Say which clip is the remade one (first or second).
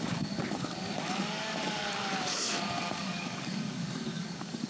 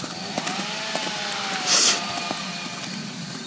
first